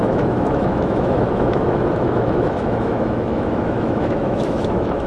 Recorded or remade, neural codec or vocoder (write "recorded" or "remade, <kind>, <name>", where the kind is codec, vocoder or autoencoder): remade, autoencoder, DAC-VAE